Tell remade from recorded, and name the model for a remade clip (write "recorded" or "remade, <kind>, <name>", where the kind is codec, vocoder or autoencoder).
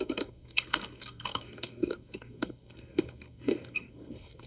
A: remade, codec, SNAC